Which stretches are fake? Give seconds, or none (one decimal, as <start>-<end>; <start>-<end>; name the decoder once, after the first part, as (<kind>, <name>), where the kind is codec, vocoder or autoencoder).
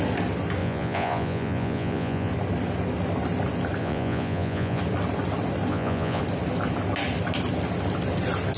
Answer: 0.6-2.3 (vocoder, Vocos); 3.8-4.8; 5.7-6.2